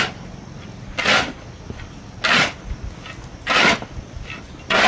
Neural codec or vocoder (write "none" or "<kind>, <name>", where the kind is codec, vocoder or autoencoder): none